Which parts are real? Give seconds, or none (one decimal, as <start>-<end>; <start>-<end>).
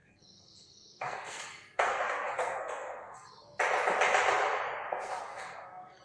3.6-4.9